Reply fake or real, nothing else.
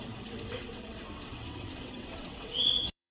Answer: fake